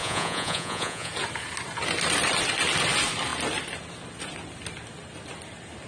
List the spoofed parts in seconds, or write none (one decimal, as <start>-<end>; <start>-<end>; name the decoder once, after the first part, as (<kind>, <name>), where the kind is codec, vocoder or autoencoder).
0.0-1.1 (vocoder, Vocos)